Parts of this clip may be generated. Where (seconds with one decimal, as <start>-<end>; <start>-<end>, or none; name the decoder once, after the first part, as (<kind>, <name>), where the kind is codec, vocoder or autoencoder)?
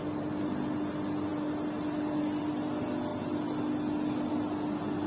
none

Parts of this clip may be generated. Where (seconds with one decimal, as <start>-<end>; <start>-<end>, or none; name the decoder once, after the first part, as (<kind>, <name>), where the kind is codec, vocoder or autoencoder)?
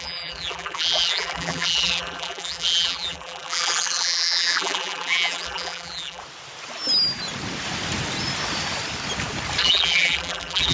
0.0-6.2 (vocoder, BigVGAN v2); 9.6-10.7